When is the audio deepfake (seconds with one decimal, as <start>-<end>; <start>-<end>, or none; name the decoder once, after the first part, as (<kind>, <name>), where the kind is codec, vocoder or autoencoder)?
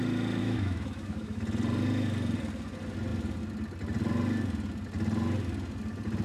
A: 0.4-1.4 (autoencoder, DAC-VAE)